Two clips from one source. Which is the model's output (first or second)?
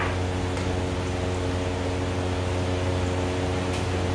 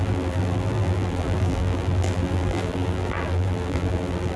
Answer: second